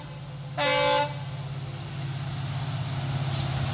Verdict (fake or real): real